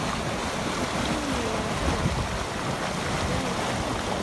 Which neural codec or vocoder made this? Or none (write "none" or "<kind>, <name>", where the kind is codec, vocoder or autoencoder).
none